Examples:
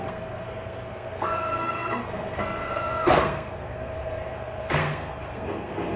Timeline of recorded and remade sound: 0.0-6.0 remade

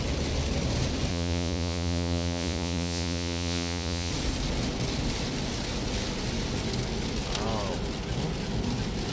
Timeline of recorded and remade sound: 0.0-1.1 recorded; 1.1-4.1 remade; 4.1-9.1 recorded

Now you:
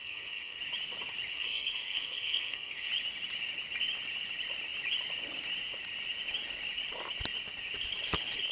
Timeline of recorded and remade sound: 0.0-0.6 remade; 0.6-1.3 recorded; 1.3-2.9 remade; 2.9-8.5 recorded

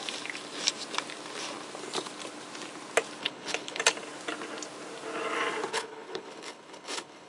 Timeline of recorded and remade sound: 0.0-3.2 recorded; 3.2-3.8 remade; 3.8-5.7 recorded; 5.7-7.3 remade

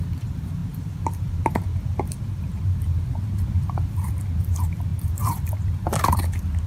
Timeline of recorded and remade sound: 0.0-6.7 remade

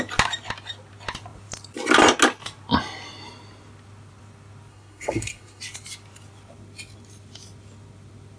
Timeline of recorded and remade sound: 0.0-4.7 recorded; 4.7-5.6 remade; 5.6-8.4 recorded